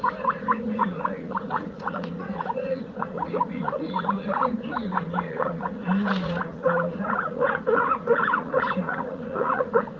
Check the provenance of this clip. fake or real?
fake